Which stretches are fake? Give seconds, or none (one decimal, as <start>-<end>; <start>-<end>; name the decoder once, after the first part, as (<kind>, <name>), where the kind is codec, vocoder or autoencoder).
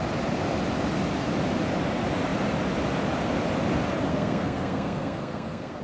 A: 4.1-5.8 (codec, SNAC)